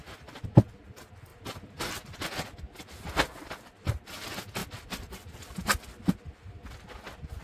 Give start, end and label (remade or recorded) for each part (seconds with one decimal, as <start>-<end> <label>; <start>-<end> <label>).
0.0-7.4 recorded